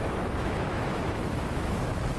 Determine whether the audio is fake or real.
fake